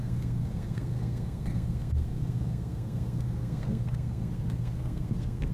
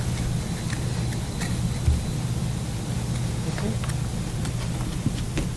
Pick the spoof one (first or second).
first